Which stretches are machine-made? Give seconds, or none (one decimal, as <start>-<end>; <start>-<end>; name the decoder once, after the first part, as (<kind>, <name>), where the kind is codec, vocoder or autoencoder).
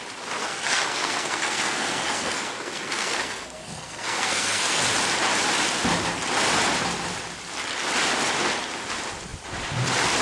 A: 0.4-4.8 (codec, SNAC)